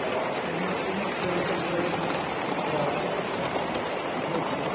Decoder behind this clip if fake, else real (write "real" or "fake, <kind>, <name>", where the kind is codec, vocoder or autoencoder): fake, vocoder, BigVGAN v2